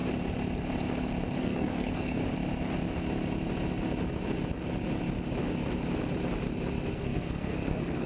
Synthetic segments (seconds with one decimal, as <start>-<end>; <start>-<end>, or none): 1.4-2.2; 6.9-8.1